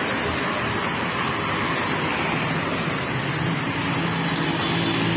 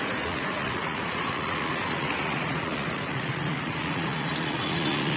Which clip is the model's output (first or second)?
second